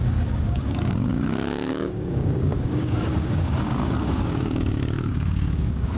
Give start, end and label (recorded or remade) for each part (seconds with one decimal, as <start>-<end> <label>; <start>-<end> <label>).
0.0-6.0 remade